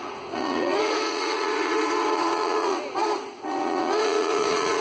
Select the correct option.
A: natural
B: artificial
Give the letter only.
B